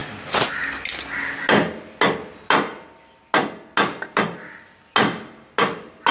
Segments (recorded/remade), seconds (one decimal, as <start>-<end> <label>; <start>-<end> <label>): 0.0-6.1 recorded